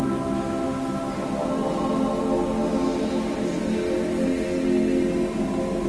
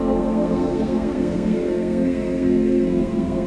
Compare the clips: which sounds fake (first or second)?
second